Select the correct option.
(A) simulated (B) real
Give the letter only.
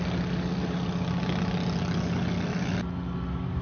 B